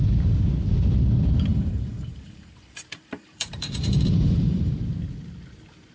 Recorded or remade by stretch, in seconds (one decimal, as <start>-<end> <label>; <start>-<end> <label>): 0.0-1.5 recorded; 1.5-4.7 remade; 4.7-5.9 recorded